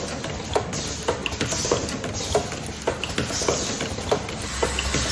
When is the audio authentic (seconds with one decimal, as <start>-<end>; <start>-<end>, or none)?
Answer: 0.0-5.1